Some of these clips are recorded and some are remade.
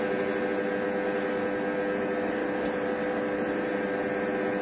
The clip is recorded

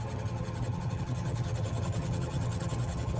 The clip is remade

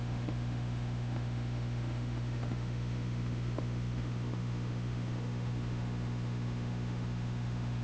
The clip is remade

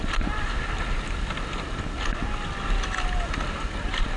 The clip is recorded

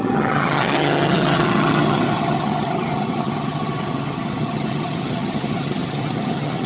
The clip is remade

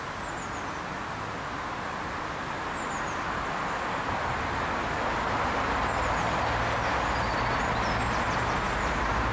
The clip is recorded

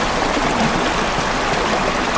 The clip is recorded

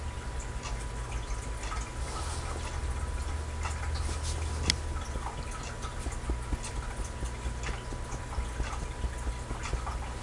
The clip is recorded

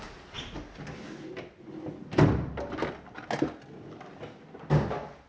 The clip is recorded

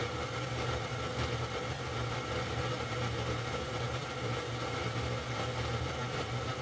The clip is recorded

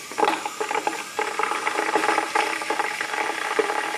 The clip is remade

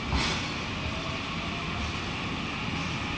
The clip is recorded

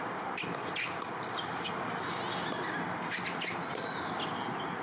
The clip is recorded